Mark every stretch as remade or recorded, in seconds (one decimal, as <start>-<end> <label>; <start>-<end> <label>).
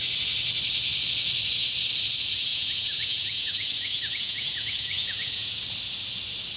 0.0-2.5 recorded; 2.5-5.5 remade; 5.5-6.6 recorded